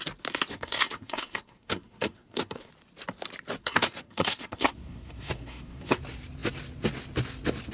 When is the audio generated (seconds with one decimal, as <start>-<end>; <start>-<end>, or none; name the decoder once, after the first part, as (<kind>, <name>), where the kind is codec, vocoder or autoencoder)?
0.5-2.7 (codec, SNAC); 3.6-6.0